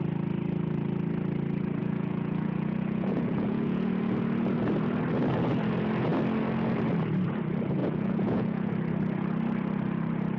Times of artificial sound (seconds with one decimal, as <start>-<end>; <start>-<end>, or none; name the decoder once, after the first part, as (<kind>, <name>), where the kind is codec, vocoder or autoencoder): 1.8-3.9 (vocoder, Vocos); 7.8-8.7